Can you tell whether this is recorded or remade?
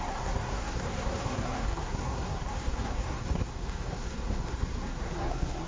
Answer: remade